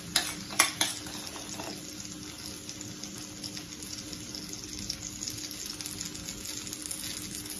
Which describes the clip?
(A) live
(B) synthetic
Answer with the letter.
A